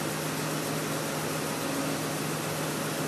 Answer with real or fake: real